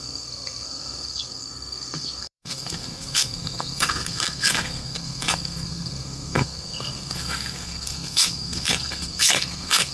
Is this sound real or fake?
fake